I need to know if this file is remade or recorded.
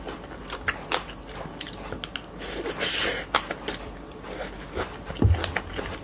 recorded